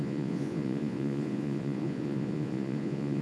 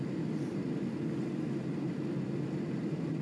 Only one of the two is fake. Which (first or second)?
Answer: first